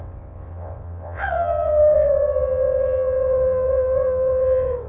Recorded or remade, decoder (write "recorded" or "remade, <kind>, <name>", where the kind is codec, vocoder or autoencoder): remade, vocoder, WaveNeXt